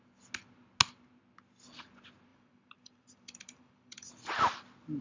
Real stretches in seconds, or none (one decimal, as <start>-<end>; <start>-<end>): 0.0-2.3; 4.1-5.0